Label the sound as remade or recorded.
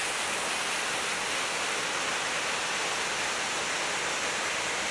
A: recorded